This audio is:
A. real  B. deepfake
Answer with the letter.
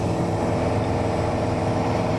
B